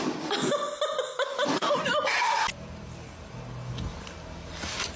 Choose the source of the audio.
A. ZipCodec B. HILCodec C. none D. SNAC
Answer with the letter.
C